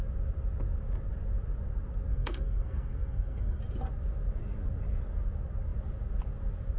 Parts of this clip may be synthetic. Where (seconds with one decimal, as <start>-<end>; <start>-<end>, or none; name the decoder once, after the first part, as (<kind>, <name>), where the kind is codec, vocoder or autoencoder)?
2.1-3.6 (codec, SNAC)